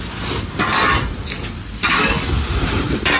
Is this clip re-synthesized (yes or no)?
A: no